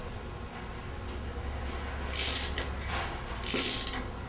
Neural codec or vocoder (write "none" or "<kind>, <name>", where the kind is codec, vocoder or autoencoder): none